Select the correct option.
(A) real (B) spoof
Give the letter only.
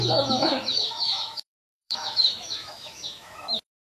B